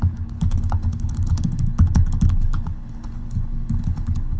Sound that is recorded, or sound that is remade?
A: remade